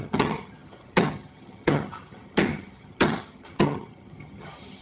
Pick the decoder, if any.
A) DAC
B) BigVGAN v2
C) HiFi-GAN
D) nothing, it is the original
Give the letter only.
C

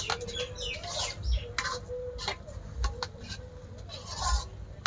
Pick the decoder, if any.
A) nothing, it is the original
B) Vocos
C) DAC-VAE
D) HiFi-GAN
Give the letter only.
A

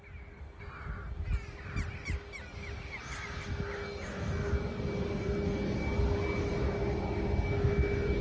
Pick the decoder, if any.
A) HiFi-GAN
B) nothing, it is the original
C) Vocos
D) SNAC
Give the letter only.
B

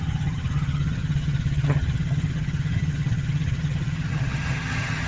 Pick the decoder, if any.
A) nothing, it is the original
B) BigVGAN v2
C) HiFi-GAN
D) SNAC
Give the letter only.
C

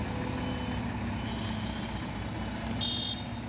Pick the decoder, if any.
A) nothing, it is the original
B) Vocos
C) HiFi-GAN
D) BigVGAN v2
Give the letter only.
A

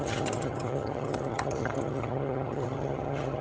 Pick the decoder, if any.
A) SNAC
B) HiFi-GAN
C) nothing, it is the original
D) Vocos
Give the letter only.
B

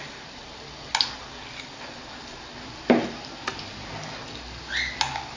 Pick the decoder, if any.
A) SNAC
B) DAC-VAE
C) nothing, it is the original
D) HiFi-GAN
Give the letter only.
C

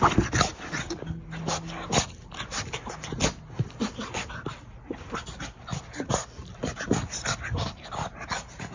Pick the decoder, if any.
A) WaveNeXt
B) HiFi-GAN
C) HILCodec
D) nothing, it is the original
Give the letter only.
D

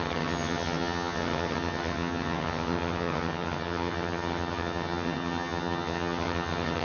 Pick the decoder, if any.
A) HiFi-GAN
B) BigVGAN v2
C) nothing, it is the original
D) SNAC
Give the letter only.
A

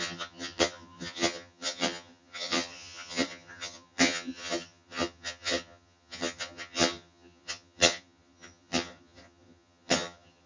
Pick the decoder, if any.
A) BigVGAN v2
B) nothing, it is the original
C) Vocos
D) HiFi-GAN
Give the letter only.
D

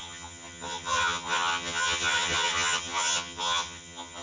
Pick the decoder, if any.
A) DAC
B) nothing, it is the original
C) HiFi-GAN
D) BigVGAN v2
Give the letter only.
C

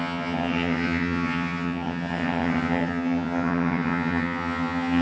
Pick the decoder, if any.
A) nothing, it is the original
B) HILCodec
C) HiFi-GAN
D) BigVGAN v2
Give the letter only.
C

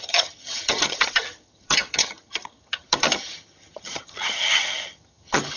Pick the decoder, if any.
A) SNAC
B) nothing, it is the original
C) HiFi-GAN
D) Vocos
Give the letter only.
C